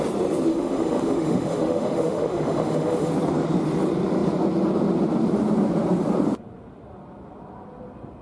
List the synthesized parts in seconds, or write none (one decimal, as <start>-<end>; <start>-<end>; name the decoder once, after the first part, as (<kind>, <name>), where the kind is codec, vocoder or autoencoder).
0.5-3.1 (autoencoder, DAC-VAE)